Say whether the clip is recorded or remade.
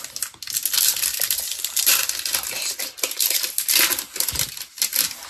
recorded